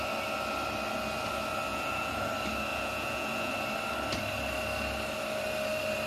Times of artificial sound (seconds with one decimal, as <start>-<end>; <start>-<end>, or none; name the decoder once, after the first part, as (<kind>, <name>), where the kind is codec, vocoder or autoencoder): 1.7-2.3 (vocoder, Vocos); 2.7-3.5